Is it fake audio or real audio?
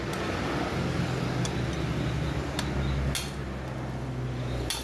real